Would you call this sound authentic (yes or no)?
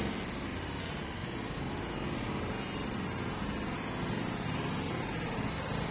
yes